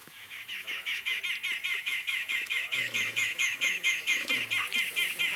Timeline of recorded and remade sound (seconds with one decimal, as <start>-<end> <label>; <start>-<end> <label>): 0.0-1.2 remade; 1.2-1.7 recorded; 1.7-4.3 remade; 4.3-5.4 recorded